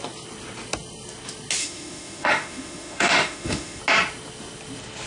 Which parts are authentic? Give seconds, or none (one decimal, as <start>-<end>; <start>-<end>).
0.0-1.6; 3.8-5.1